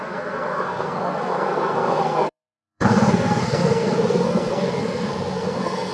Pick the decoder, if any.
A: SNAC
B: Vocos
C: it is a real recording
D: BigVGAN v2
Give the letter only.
A